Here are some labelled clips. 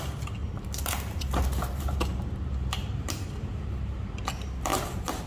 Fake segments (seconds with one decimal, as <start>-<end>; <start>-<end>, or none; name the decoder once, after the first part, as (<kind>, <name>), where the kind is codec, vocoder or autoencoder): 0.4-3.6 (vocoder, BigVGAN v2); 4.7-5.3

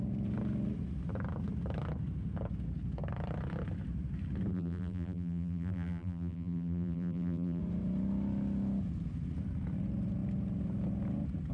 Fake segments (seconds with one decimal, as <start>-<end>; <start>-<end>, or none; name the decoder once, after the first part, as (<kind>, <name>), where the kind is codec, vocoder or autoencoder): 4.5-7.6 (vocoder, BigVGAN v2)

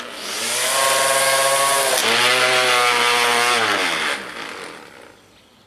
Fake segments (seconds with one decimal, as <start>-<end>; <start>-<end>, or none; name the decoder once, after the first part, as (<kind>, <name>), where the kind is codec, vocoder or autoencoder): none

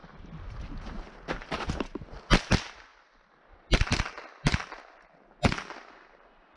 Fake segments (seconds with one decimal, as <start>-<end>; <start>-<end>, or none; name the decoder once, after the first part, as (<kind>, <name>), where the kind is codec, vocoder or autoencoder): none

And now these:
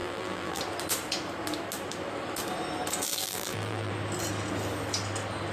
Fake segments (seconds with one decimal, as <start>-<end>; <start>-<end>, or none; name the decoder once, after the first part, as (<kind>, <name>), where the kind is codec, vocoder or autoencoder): 0.0-0.6 (vocoder, BigVGAN v2); 3.1-3.9

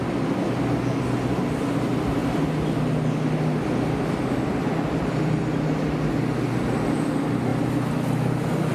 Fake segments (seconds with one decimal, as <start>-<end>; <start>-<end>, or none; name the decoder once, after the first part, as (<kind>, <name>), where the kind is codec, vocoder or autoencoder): none

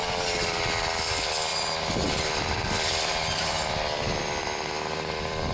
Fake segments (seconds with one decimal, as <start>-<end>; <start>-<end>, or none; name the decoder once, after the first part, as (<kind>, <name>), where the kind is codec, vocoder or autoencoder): 0.9-1.5 (vocoder, BigVGAN v2); 2.1-5.5